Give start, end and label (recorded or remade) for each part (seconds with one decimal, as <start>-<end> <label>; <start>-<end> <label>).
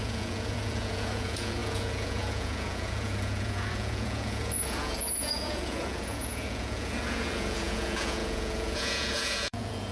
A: 0.0-9.9 remade